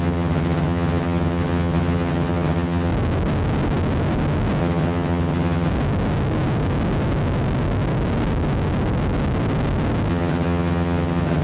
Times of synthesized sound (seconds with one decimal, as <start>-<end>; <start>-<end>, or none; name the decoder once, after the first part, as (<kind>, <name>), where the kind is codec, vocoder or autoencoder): 0.0-2.9 (vocoder, HiFi-GAN); 4.6-5.7; 10.1-11.4